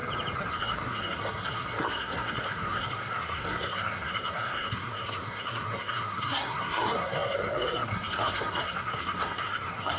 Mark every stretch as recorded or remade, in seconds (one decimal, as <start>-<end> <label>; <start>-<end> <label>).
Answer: 0.0-0.5 recorded; 0.5-10.0 remade